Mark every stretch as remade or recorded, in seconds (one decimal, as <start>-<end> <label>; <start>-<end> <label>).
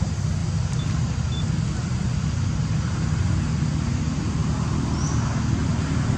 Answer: 0.0-6.2 recorded